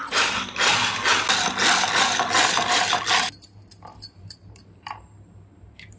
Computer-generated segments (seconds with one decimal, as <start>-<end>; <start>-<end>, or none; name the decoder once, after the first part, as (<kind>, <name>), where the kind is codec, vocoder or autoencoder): 0.0-0.7 (vocoder, BigVGAN v2); 4.2-6.0